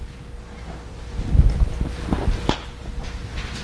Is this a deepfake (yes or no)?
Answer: no